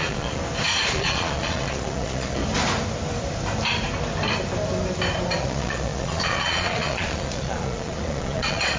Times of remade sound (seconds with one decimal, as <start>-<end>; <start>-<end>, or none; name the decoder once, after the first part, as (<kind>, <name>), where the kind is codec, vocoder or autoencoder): 0.0-0.4 (vocoder, Vocos); 0.9-2.4; 5.4-8.8